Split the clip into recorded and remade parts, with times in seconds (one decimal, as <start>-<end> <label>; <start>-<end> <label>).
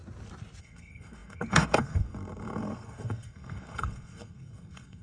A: 0.0-0.6 recorded; 0.6-5.0 remade